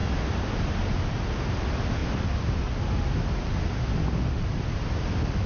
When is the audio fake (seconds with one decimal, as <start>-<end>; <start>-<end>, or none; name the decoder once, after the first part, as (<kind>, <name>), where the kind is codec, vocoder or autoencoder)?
none